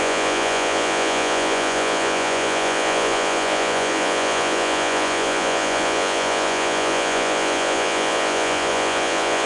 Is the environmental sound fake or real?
fake